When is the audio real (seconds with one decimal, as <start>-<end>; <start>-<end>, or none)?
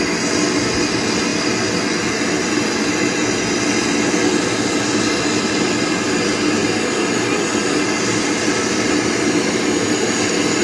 0.0-10.6